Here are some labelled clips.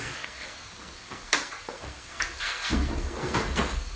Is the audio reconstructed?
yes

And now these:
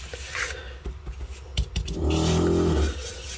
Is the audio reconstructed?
no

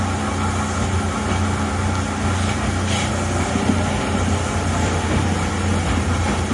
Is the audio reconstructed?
no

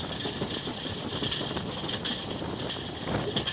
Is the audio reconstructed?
no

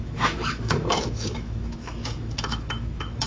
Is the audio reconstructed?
yes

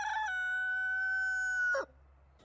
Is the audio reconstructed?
no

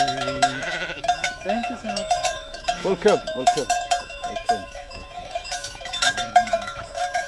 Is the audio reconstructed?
yes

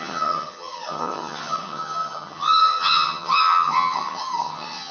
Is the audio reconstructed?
yes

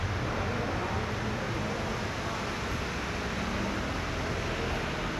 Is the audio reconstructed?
no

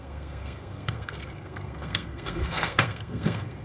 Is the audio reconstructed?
yes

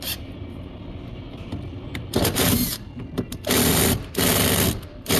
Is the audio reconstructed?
yes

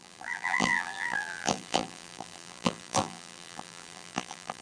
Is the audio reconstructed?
yes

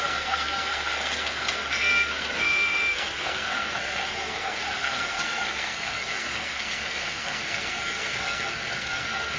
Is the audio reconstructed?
yes